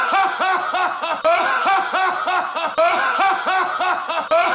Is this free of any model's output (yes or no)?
yes